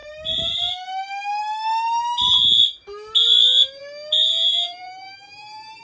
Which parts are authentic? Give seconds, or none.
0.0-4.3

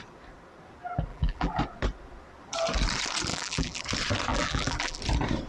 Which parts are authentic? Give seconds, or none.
0.0-1.1; 1.6-3.3; 3.8-4.3; 5.0-5.5

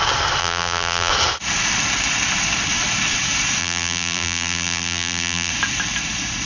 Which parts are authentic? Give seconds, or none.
0.0-0.4; 1.1-3.6; 5.5-6.5

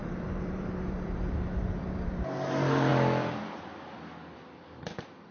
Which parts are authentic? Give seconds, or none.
2.9-4.8